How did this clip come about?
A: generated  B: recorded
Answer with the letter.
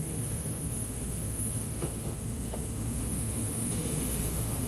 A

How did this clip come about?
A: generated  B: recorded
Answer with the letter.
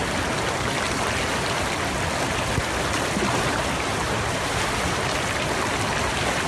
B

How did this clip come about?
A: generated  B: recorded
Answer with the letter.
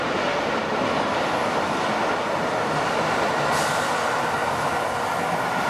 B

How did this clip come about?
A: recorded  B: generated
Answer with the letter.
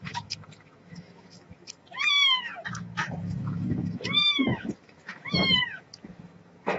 B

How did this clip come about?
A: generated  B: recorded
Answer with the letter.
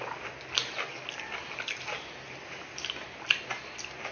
B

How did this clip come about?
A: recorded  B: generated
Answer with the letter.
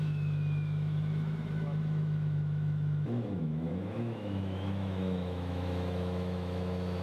B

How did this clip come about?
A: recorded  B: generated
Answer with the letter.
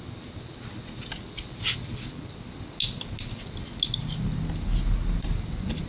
A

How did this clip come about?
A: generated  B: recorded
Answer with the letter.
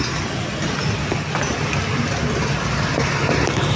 B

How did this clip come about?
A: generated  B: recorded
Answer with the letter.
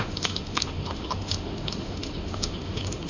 A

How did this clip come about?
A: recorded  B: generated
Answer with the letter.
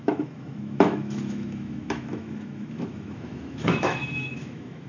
B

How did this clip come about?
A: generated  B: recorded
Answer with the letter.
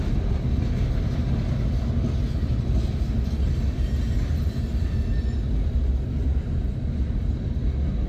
B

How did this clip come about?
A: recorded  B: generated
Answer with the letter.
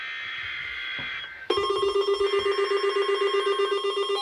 A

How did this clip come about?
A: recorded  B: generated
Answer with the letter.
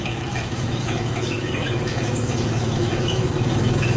B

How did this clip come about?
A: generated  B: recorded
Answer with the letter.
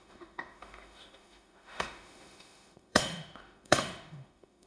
A